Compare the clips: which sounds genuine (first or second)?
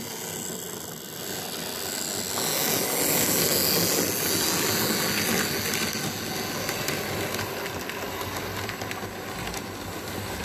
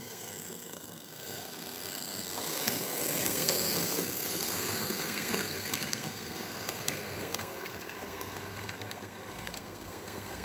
first